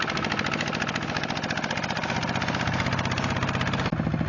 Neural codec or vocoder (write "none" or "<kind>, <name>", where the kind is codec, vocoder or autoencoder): none